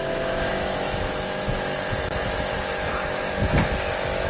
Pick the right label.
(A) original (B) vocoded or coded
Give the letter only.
B